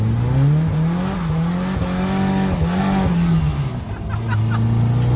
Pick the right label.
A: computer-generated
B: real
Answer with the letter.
B